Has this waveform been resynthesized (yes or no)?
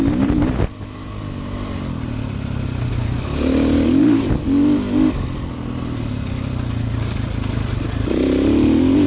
no